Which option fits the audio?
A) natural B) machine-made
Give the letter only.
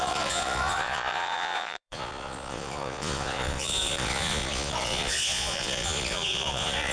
B